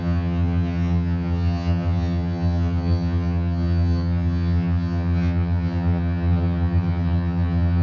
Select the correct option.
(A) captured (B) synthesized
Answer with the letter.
B